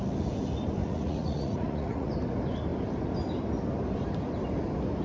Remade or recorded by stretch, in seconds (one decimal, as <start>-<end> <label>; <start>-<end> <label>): 0.0-0.8 recorded; 0.8-2.1 remade; 2.1-5.0 recorded